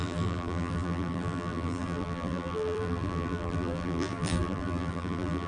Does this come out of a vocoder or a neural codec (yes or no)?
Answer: yes